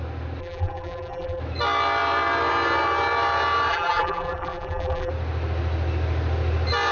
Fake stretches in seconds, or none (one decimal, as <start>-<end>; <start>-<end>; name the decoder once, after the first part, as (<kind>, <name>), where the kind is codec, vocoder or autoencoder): 0.4-1.4 (vocoder, BigVGAN v2); 3.7-5.1